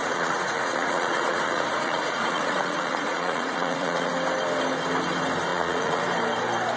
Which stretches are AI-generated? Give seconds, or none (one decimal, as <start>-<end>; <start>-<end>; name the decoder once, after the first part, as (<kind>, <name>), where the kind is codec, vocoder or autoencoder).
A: 0.0-4.1 (vocoder, Vocos); 5.5-6.0